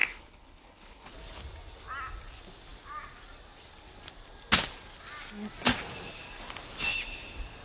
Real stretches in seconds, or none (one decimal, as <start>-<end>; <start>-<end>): 1.1-7.6